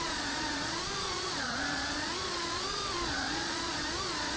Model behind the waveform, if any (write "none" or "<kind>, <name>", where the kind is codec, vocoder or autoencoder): vocoder, Vocos